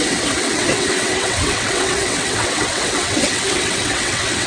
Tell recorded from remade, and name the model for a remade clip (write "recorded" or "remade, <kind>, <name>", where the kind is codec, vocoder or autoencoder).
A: remade, vocoder, WaveNeXt